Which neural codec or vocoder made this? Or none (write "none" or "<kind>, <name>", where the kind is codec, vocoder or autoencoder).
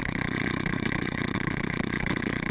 vocoder, WaveNeXt